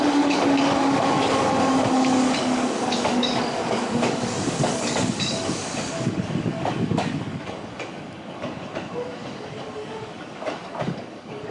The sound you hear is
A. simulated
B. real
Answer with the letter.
A